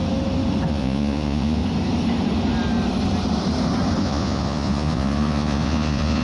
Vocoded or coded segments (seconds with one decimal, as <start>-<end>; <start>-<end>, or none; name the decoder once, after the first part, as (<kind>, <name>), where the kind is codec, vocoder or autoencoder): 0.7-1.6 (vocoder, Vocos); 4.0-6.2